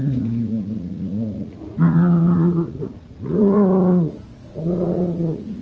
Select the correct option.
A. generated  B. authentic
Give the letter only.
A